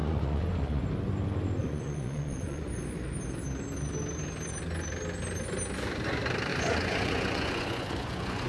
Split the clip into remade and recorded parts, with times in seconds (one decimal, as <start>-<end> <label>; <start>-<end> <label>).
0.0-0.8 remade; 0.8-1.6 recorded; 1.6-2.7 remade; 2.7-6.5 recorded; 6.5-8.5 remade